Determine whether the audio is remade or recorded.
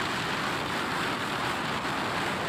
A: recorded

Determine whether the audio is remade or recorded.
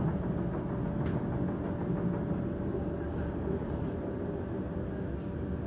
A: recorded